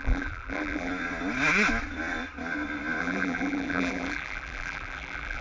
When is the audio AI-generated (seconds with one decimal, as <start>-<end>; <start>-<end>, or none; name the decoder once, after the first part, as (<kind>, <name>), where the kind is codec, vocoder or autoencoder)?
0.0-0.9 (vocoder, BigVGAN v2); 3.0-5.4

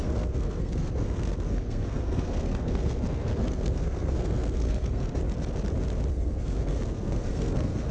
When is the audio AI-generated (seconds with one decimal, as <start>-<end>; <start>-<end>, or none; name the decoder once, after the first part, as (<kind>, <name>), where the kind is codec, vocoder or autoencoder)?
0.0-5.2 (codec, SNAC); 6.1-7.9

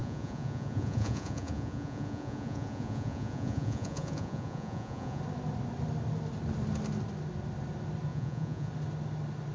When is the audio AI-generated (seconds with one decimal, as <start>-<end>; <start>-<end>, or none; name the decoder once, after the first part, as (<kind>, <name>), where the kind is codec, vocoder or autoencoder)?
0.0-5.2 (vocoder, Vocos); 8.1-8.7

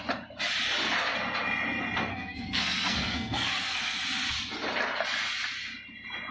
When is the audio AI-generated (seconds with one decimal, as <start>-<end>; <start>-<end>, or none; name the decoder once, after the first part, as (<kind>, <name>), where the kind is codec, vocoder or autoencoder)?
2.1-4.0 (codec, SNAC)

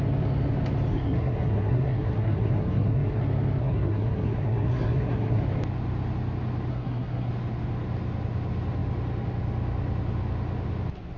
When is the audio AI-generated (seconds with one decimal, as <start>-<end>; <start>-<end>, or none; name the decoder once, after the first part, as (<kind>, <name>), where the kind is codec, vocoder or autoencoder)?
0.9-3.2 (codec, SNAC); 3.6-5.4; 6.7-7.3

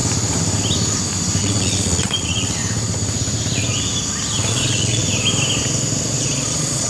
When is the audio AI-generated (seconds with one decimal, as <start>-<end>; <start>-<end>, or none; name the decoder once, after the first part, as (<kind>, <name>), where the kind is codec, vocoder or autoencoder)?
1.4-2.6 (vocoder, Vocos); 4.5-5.0; 6.2-6.9

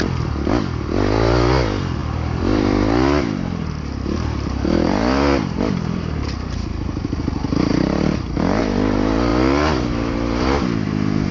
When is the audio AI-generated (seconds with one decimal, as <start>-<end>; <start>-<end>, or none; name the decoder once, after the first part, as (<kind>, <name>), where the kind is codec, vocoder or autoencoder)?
2.0-7.2 (vocoder, BigVGAN v2); 7.7-8.6